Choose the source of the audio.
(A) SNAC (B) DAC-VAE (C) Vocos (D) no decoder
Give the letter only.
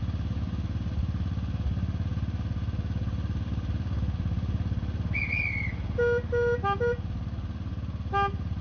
D